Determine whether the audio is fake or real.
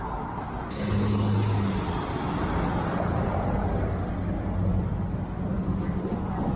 real